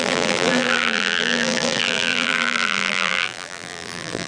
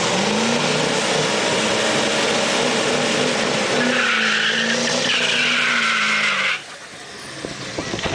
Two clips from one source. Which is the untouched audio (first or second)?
second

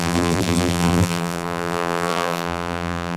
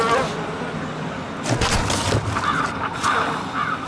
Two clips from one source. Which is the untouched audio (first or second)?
second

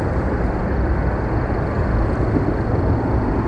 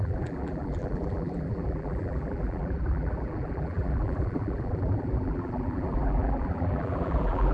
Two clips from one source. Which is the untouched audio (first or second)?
first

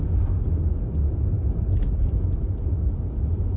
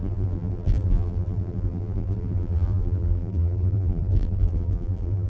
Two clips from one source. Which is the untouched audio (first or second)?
first